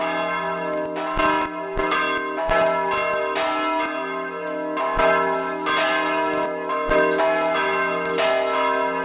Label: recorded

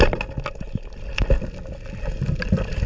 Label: recorded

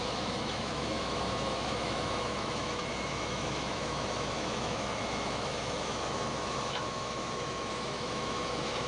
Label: remade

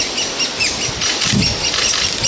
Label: recorded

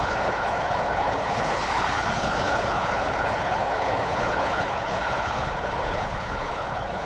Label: remade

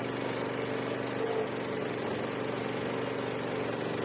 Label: recorded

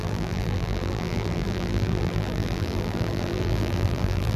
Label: remade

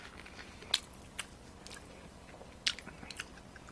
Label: recorded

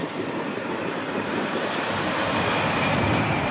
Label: remade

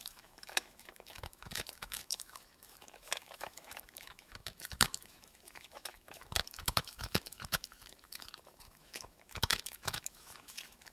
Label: remade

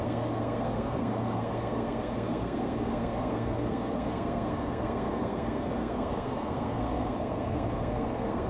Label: remade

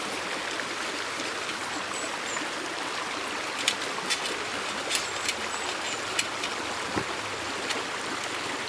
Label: recorded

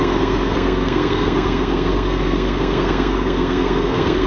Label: remade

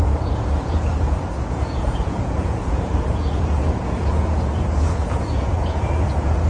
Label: remade